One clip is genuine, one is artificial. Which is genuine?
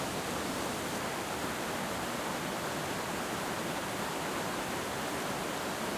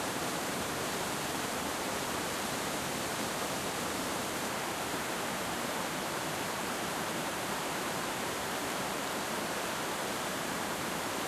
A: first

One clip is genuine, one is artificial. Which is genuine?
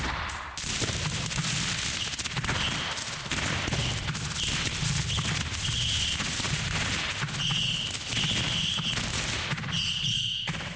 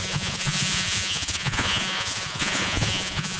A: first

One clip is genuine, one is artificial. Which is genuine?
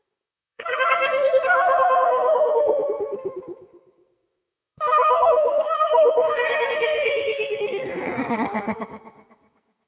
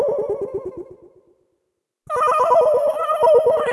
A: second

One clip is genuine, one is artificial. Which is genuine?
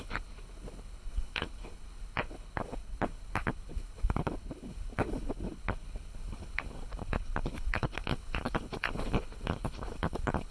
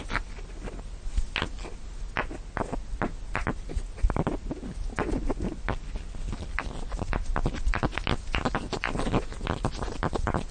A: second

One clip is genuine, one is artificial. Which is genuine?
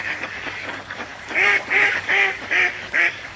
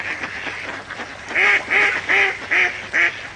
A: second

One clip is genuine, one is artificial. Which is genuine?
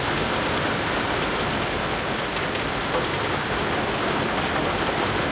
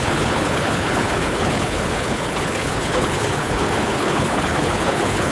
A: first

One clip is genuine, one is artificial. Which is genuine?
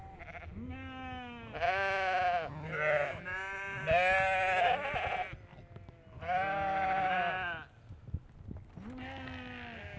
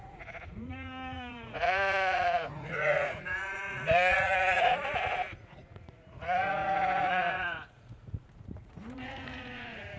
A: first